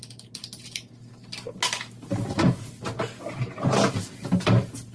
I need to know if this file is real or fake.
real